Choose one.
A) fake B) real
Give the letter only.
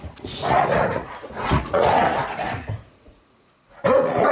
A